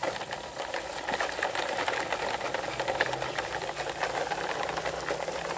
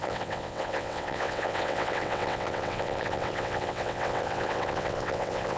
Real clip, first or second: first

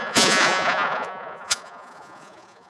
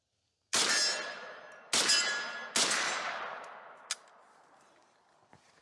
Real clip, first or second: second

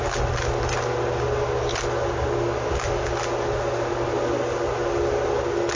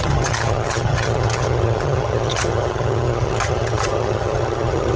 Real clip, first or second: first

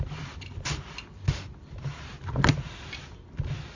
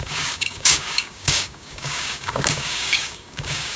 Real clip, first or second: first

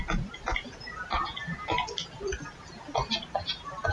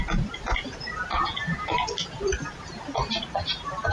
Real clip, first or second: first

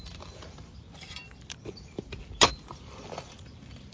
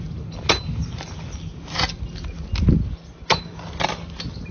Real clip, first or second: second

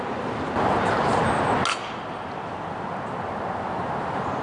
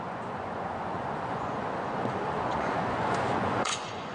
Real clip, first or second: first